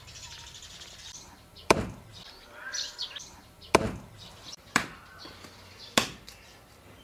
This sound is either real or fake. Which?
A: fake